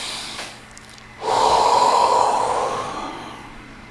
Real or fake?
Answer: fake